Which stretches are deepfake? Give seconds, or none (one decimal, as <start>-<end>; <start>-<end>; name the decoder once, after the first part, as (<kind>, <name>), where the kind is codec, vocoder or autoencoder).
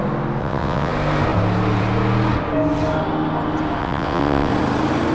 0.4-0.9 (vocoder, WaveNeXt); 3.8-4.5